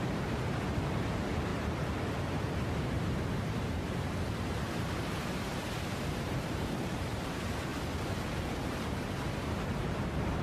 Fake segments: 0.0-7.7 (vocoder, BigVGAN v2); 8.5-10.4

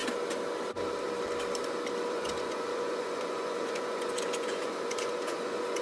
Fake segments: 2.1-5.8 (vocoder, Vocos)

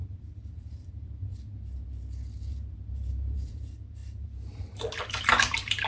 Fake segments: 0.0-1.3 (vocoder, BigVGAN v2); 2.5-5.9

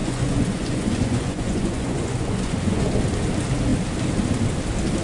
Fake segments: 0.0-3.0 (vocoder, Vocos)

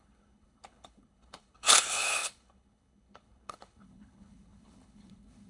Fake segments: 0.0-5.5 (codec, HILCodec)